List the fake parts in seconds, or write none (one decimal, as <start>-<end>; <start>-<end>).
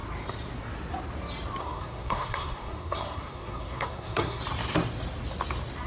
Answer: 1.6-4.4